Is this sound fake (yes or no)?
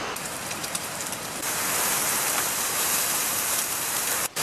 yes